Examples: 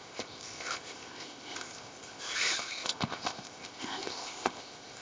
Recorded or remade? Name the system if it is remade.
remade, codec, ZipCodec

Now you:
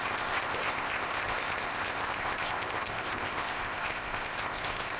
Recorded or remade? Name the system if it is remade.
remade, codec, ZipCodec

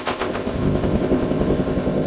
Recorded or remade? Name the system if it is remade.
remade, codec, ZipCodec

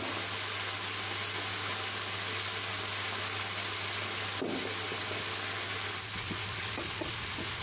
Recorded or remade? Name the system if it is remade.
recorded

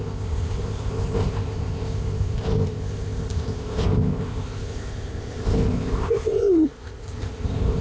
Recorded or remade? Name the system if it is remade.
remade, codec, ZipCodec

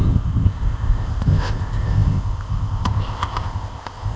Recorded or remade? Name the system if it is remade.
remade, codec, ZipCodec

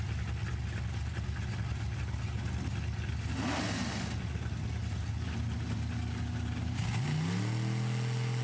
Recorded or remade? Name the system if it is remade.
recorded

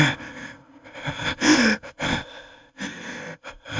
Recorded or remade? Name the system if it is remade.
remade, codec, ZipCodec